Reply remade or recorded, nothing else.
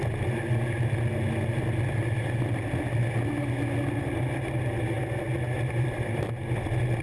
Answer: recorded